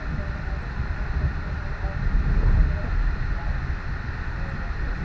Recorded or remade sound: recorded